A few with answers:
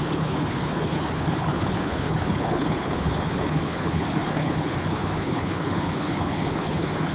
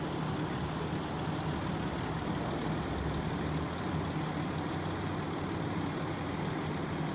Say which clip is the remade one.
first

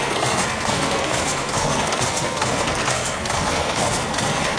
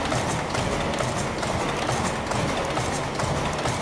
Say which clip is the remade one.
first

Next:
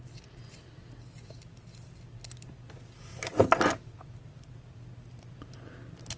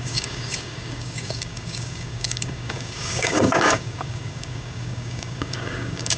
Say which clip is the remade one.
second